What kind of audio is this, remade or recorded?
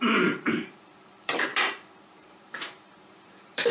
remade